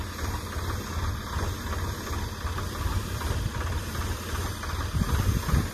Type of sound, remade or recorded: recorded